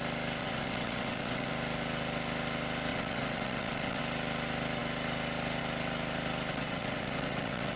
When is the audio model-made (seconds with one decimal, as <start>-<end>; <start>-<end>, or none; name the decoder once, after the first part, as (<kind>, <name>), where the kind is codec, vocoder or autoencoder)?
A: 0.4-1.5 (vocoder, WaveNeXt); 2.9-4.0; 6.5-7.8